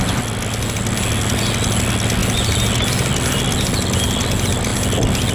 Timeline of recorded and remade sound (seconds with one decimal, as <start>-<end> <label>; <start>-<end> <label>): 0.0-5.3 recorded